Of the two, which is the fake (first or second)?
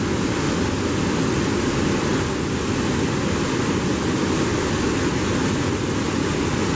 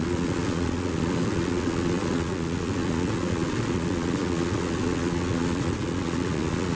second